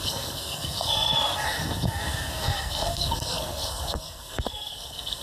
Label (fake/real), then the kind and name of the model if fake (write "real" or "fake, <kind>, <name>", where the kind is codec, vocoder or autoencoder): fake, codec, SNAC